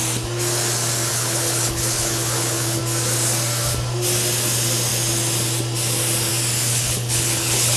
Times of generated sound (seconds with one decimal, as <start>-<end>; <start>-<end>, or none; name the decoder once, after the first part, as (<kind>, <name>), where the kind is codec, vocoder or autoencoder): 1.1-2.8 (codec, HILCodec); 6.7-7.8